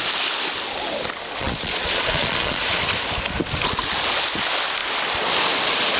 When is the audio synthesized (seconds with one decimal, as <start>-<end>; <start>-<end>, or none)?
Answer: 1.4-2.6